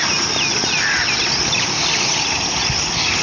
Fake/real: real